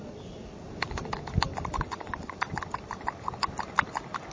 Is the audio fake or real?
real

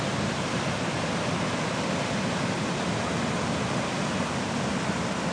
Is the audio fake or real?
real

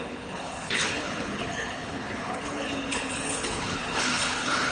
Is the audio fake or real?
fake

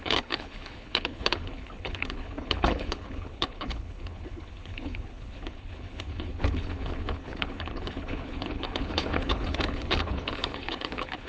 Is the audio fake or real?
fake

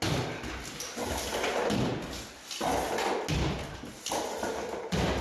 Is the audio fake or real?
real